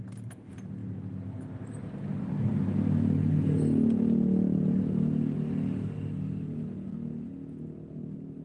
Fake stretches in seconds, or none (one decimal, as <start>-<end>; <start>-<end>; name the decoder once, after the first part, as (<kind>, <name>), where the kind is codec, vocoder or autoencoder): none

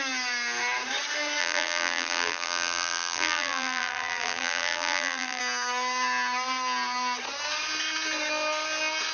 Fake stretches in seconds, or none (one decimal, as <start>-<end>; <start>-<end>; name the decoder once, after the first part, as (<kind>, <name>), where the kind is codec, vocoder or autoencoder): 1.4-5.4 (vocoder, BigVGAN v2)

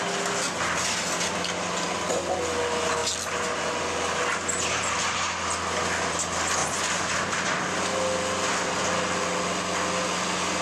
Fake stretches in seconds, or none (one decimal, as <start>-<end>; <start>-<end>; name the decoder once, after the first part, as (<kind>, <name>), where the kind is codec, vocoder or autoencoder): 6.6-8.8 (vocoder, BigVGAN v2)

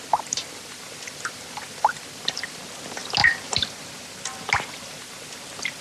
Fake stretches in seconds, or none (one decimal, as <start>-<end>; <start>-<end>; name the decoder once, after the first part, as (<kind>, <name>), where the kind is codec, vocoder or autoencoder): 0.4-2.6 (vocoder, BigVGAN v2); 3.2-4.2